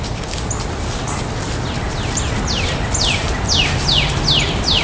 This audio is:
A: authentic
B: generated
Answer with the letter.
A